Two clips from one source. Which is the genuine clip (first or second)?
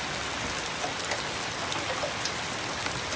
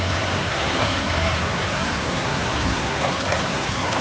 first